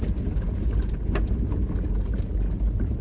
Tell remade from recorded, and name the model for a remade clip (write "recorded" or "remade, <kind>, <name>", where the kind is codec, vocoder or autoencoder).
recorded